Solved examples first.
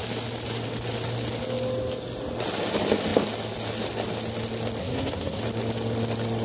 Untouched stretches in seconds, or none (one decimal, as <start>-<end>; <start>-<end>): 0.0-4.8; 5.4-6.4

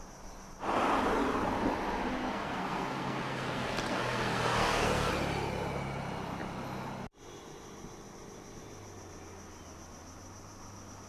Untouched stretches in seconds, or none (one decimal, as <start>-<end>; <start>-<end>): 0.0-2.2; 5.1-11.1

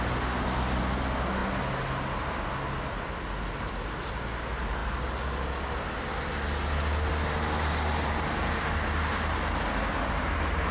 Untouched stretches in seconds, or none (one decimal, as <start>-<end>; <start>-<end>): 0.0-10.7

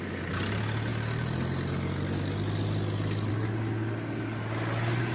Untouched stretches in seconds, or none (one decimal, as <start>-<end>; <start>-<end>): 0.0-5.1

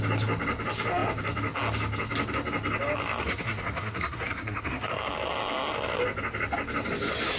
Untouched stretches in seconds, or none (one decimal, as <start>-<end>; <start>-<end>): 0.0-3.2; 4.9-7.4